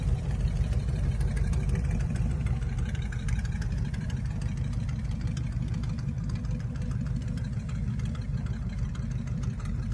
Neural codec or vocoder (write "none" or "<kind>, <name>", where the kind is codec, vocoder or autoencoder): vocoder, BigVGAN v2